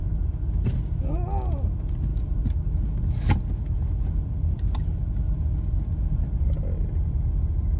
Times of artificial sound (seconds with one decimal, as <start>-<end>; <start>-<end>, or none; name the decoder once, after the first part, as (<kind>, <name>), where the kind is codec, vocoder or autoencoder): none